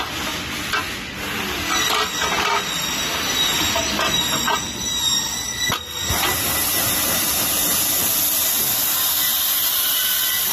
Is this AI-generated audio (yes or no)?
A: no